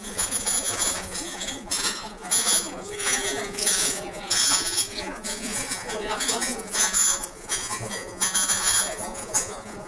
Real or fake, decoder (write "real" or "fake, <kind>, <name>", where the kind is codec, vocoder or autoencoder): fake, vocoder, Vocos